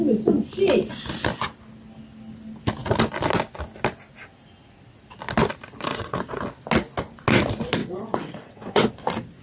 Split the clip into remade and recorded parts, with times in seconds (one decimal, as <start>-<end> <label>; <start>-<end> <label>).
0.0-5.9 recorded; 5.9-6.4 remade; 6.4-7.8 recorded; 7.8-8.9 remade; 8.9-9.4 recorded